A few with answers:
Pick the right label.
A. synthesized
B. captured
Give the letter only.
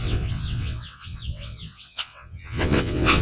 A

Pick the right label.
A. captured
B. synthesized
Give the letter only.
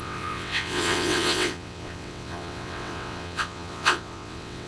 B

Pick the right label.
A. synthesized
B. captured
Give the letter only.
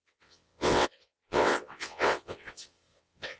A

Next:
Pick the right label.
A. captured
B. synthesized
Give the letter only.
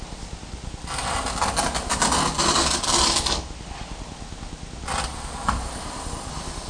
A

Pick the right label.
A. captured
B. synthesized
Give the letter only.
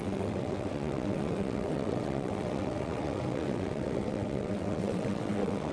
B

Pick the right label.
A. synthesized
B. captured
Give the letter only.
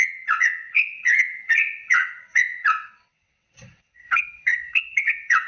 A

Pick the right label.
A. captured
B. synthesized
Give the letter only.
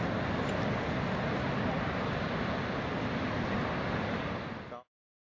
A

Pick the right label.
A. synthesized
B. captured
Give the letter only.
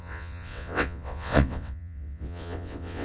A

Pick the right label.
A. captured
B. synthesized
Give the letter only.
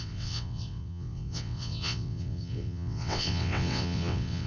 B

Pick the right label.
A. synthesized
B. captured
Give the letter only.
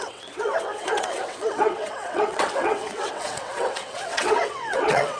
A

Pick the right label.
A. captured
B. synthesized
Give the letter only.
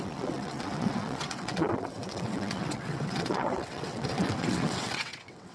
B